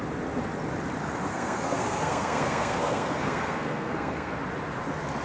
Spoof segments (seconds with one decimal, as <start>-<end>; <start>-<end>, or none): 1.3-4.4